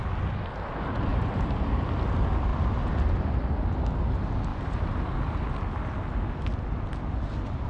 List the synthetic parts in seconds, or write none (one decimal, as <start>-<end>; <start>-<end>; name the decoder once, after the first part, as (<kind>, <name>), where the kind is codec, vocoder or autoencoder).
1.1-1.7 (vocoder, BigVGAN v2); 4.5-5.1